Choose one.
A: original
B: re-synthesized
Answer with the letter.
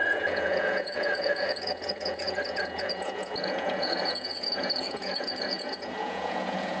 B